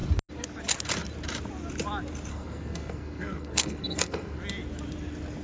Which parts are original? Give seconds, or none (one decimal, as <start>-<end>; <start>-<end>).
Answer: 0.0-2.3; 4.4-5.4